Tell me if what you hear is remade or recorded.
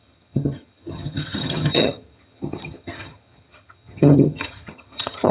remade